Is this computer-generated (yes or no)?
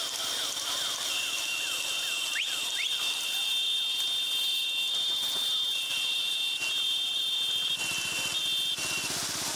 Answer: no